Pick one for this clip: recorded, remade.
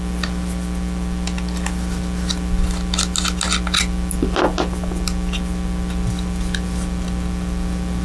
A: recorded